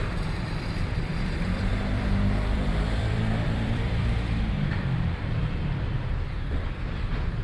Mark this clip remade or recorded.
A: remade